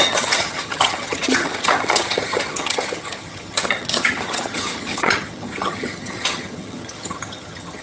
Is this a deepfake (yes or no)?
yes